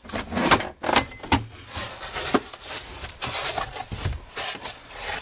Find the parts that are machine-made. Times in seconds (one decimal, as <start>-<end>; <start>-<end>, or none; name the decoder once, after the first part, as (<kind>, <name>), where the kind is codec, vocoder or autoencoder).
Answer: 1.8-5.2 (vocoder, BigVGAN v2)